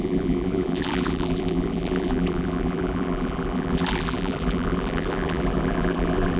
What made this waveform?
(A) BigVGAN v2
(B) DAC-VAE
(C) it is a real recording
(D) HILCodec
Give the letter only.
A